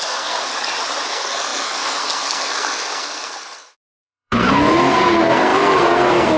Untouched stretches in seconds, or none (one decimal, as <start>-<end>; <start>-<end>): 0.5-1.1